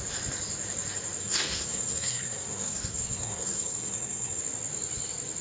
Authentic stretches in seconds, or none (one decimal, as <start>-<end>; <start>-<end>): 0.0-1.2; 4.4-5.4